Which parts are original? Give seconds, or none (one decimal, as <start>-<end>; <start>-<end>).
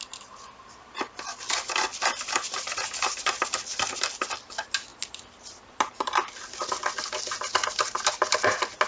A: 0.0-8.9